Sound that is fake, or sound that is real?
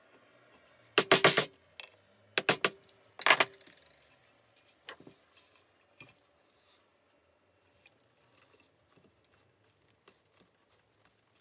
real